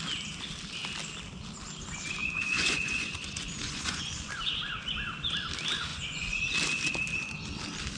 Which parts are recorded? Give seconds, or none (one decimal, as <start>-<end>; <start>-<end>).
0.0-2.2; 4.3-5.9; 6.4-8.0